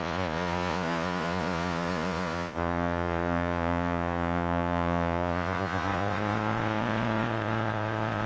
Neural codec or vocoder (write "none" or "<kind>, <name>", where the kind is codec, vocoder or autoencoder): vocoder, Vocos